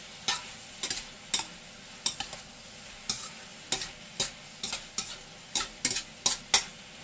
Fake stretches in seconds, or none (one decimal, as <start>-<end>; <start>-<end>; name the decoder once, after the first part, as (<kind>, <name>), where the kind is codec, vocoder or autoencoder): none